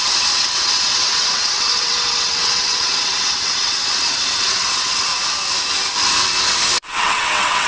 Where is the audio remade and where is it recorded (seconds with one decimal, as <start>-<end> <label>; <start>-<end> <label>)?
0.0-5.1 remade; 5.1-6.7 recorded; 6.7-7.7 remade